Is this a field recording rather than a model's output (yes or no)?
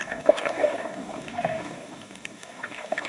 no